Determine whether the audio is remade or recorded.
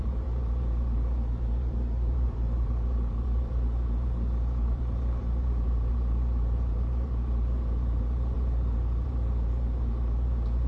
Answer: remade